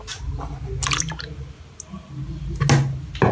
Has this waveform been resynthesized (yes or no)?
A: no